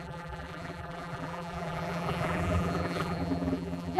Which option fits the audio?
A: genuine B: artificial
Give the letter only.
B